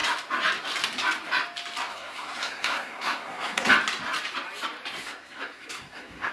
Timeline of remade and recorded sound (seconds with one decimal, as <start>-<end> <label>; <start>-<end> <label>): 0.0-1.9 recorded; 1.9-3.7 remade; 3.7-5.0 recorded; 5.0-6.3 remade